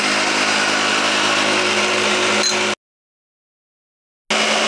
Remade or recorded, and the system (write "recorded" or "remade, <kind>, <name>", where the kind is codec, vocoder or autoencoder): recorded